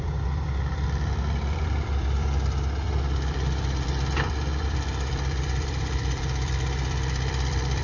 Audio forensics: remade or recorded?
remade